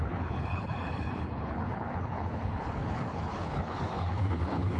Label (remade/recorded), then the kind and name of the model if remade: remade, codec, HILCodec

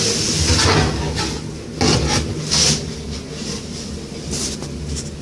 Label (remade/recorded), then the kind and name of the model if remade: recorded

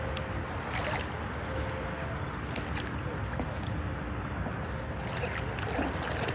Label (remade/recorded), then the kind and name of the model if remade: recorded